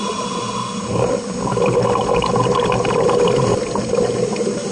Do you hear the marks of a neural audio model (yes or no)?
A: no